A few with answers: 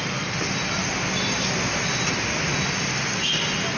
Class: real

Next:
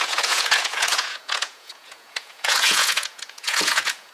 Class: fake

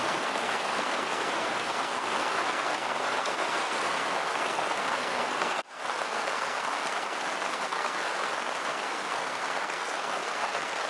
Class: fake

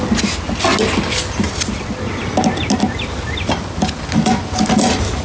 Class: real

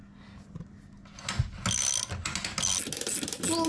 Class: real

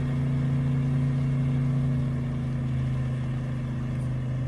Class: real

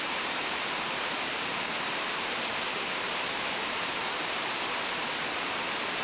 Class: fake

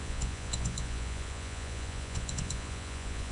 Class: fake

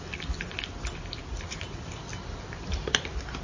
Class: real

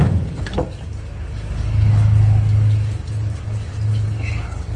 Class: fake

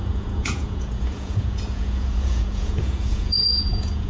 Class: fake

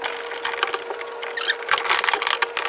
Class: real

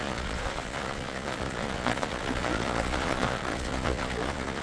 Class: fake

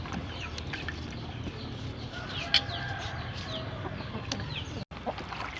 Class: real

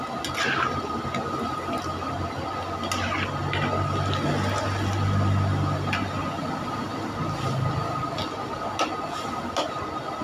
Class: real